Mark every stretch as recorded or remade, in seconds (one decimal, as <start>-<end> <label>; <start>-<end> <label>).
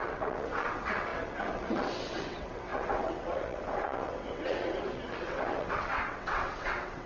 0.0-7.1 remade